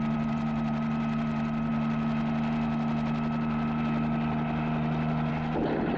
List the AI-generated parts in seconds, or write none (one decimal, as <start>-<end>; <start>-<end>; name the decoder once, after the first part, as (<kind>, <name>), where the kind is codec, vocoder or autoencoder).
none